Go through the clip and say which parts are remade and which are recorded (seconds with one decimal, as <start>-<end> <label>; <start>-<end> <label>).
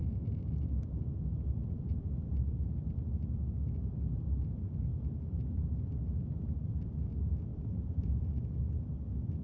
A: 0.0-2.5 remade; 2.5-7.5 recorded; 7.5-8.6 remade; 8.6-9.4 recorded